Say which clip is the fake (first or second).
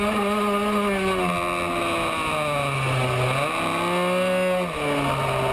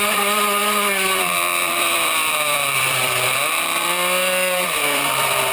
second